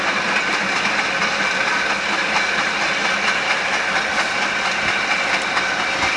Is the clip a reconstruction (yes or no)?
no